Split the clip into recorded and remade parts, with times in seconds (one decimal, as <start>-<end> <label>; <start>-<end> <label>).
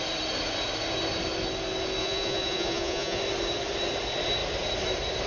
0.0-2.0 recorded; 2.0-3.2 remade; 3.2-5.3 recorded